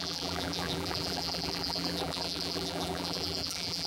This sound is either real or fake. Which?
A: fake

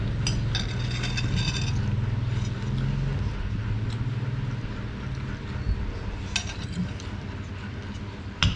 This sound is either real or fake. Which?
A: real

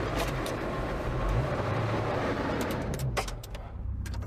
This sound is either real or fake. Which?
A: fake